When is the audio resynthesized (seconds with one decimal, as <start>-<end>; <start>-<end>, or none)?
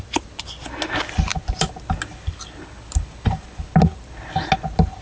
none